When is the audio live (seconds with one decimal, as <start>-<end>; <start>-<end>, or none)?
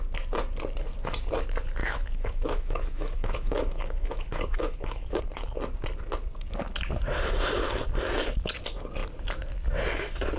0.0-1.8; 5.2-10.4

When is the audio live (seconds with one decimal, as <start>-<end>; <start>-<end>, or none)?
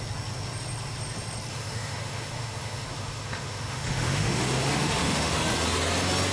0.0-1.5; 5.3-6.3